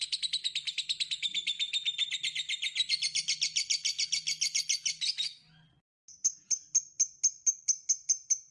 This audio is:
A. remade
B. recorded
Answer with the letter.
B